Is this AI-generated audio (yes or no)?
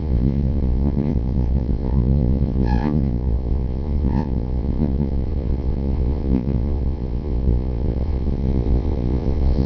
yes